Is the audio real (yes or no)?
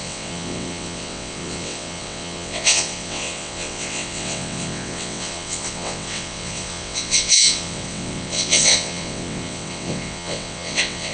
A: no